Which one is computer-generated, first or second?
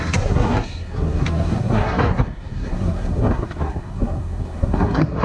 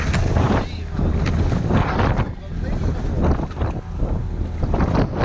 first